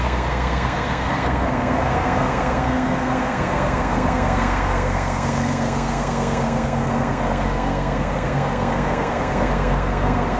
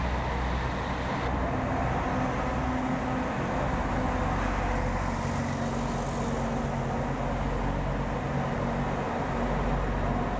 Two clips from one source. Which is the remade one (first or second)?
first